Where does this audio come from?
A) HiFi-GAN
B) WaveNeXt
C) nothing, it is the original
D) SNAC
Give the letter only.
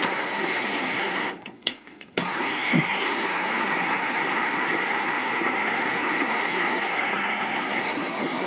D